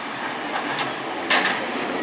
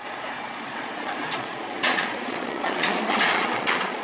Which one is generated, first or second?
second